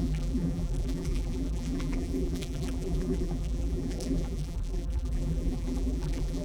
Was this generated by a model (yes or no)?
yes